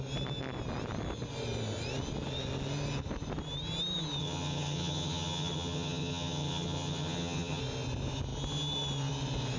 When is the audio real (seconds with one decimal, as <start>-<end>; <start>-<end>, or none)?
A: 0.0-4.2; 7.6-9.6